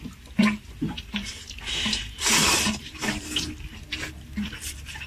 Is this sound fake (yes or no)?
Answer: yes